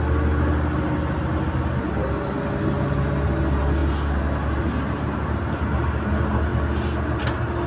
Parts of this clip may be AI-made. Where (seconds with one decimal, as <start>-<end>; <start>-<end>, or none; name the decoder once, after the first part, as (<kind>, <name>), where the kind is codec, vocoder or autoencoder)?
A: none